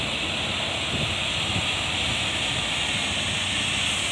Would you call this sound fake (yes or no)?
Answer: no